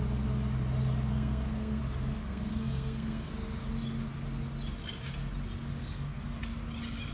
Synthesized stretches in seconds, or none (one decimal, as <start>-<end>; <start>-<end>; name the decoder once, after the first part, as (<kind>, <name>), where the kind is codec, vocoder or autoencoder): 1.1-1.8 (codec, SNAC); 2.2-3.3; 5.8-6.4